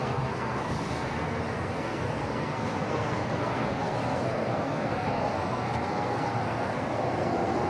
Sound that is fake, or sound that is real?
fake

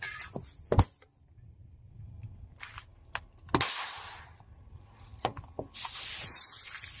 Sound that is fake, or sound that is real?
real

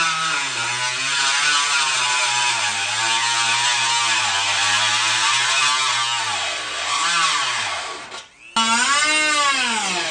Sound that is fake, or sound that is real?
real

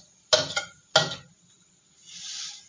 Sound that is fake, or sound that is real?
real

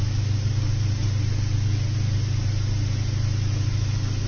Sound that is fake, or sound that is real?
real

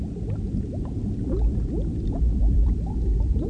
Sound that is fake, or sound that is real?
fake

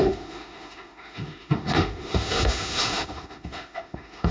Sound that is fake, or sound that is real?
fake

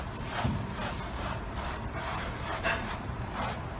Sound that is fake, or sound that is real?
fake